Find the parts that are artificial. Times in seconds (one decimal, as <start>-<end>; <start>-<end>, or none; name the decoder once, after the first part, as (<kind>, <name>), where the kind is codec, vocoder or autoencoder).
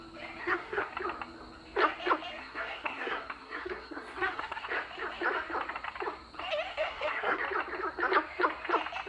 0.4-0.9 (codec, SNAC); 2.4-4.7; 6.7-7.4